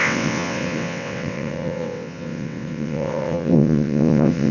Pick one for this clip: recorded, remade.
remade